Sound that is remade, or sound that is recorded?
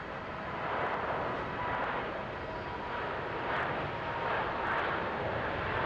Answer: recorded